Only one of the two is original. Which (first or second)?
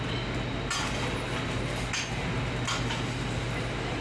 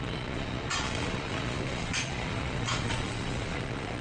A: first